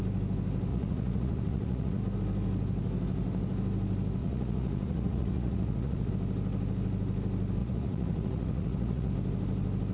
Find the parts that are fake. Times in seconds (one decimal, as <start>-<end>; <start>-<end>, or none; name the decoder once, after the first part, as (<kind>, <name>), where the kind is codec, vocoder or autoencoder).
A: 0.7-2.0 (vocoder, Vocos); 4.2-6.1; 7.6-9.1